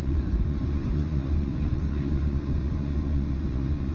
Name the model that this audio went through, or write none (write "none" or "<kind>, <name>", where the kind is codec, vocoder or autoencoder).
vocoder, Vocos